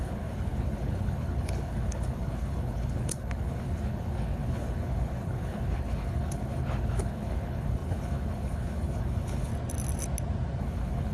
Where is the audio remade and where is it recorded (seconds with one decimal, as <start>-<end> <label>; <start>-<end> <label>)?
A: 0.0-9.5 remade; 9.5-10.6 recorded; 10.6-11.1 remade